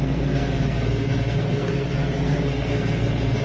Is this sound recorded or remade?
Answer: remade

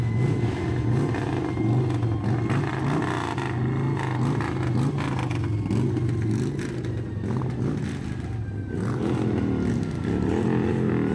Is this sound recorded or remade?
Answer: recorded